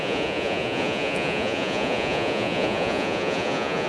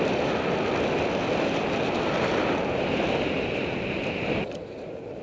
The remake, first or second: first